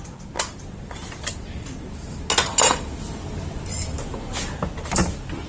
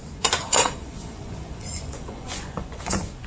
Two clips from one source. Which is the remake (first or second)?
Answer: second